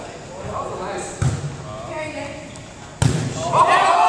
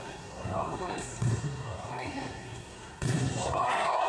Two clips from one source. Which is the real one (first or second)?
first